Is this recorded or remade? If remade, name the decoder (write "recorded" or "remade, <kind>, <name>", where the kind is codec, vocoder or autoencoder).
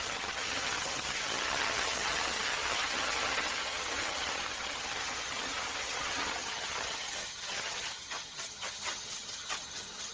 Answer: remade, vocoder, HiFi-GAN